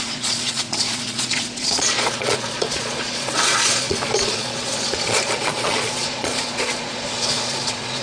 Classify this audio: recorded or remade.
remade